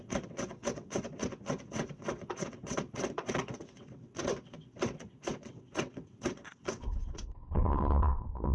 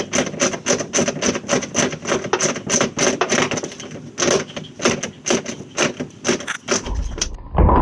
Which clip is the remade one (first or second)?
first